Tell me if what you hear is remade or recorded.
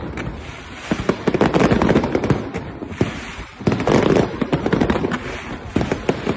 recorded